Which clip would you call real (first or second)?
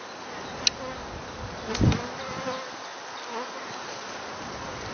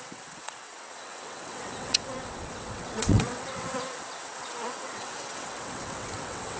first